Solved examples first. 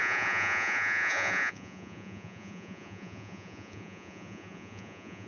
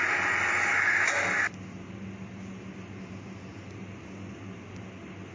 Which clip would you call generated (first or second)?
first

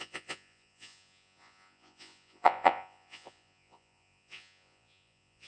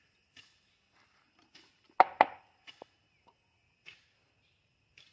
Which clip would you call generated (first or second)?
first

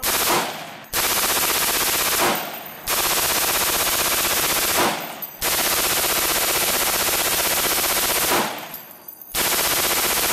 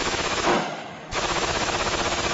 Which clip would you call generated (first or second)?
second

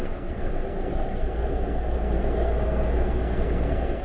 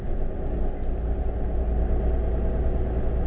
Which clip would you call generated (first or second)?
first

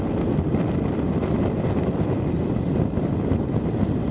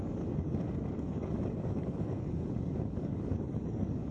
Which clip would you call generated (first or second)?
second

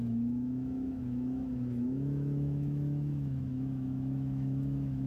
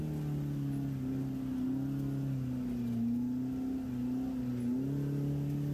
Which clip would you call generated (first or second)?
first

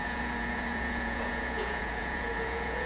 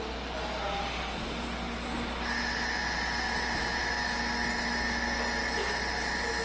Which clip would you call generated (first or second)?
first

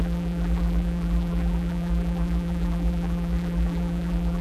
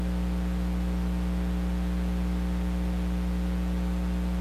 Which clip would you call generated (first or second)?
first